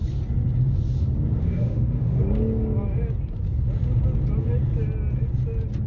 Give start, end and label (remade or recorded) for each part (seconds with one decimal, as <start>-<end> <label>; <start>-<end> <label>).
0.0-1.4 recorded; 1.4-2.2 remade; 2.2-5.9 recorded